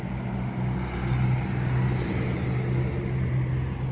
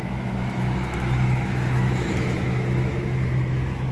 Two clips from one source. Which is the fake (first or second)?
second